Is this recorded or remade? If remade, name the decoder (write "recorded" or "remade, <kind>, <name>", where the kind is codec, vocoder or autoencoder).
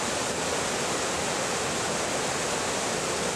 recorded